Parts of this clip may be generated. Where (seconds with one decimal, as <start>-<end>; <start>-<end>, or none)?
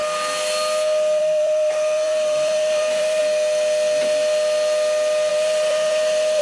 1.2-3.2; 5.3-6.4